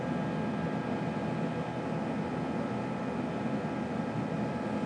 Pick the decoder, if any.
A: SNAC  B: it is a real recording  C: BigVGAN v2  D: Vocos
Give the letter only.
B